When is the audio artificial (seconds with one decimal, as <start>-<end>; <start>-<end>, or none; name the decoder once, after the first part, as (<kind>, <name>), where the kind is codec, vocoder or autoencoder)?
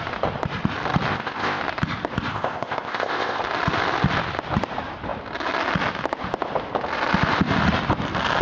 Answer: 1.1-1.6 (codec, ZipCodec); 2.3-3.4